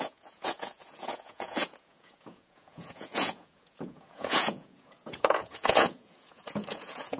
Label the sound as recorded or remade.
remade